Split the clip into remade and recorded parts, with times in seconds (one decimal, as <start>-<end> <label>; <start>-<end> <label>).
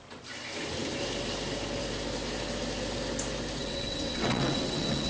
0.0-3.6 recorded; 3.6-5.1 remade